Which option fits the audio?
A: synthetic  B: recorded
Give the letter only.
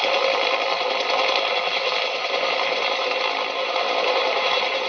B